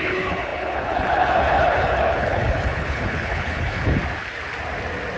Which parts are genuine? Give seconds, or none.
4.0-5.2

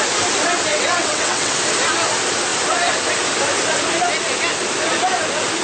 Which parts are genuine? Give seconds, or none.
0.0-0.7; 1.6-5.6

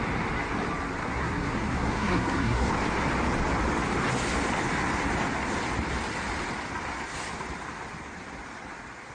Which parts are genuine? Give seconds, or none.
0.0-1.0; 2.7-9.1

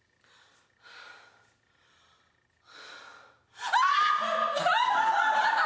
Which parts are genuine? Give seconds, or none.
0.0-5.7

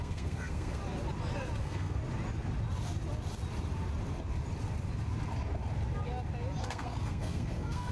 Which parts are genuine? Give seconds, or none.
0.8-1.6; 2.0-6.6